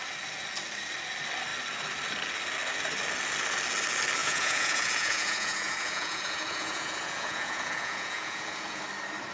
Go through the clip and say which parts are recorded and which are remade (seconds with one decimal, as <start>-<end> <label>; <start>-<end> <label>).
0.0-4.2 recorded; 4.2-8.8 remade; 8.8-9.3 recorded